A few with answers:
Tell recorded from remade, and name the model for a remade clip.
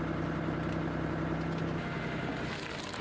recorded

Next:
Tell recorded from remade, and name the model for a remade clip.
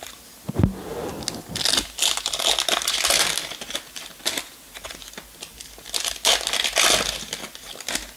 recorded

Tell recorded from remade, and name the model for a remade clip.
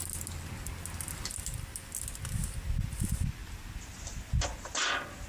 recorded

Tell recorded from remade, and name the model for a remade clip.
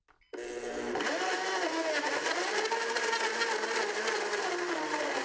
recorded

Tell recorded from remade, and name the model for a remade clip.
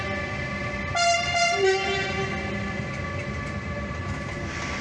recorded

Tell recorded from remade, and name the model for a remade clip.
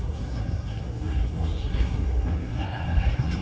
remade, codec, SNAC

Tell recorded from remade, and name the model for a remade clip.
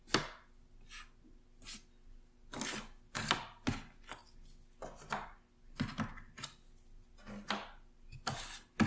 recorded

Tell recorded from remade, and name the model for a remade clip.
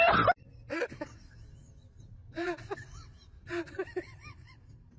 recorded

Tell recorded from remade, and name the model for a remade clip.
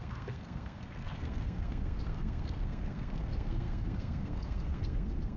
remade, codec, SNAC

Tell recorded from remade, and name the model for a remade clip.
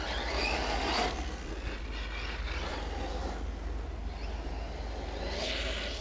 recorded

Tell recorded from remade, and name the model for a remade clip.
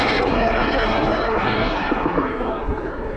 remade, codec, SNAC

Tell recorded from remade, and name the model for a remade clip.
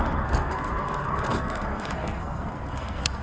remade, codec, SNAC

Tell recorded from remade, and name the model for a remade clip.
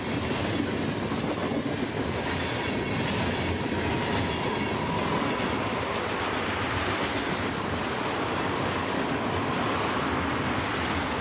recorded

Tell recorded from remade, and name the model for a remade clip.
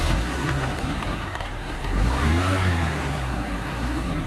remade, codec, SNAC